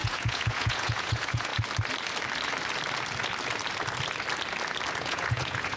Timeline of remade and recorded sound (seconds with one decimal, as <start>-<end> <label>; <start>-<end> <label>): 0.0-1.5 remade; 1.5-5.0 recorded; 5.0-5.8 remade